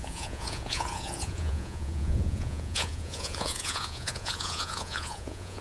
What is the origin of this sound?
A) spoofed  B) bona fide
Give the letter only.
A